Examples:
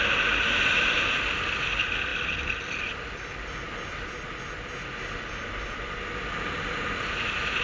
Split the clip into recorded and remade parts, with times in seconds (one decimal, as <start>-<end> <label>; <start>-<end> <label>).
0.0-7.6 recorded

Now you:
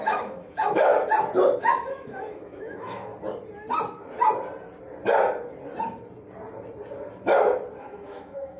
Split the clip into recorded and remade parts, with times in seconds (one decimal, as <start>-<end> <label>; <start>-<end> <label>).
0.0-0.9 remade; 0.9-1.6 recorded; 1.6-3.1 remade; 3.1-7.8 recorded; 7.8-8.6 remade

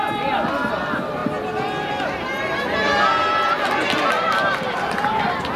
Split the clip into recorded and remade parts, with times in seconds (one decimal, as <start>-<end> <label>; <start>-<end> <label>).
0.0-1.2 remade; 1.2-4.1 recorded; 4.1-5.6 remade

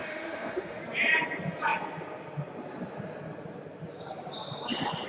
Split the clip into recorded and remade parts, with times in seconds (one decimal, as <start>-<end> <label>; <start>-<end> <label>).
0.0-0.8 remade; 0.8-5.1 recorded

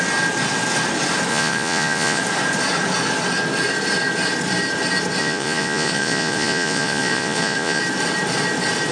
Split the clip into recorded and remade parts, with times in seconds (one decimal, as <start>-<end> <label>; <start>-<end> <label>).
0.0-1.3 recorded; 1.3-2.2 remade; 2.2-5.2 recorded; 5.2-7.8 remade; 7.8-8.9 recorded